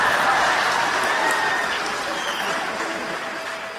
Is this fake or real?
real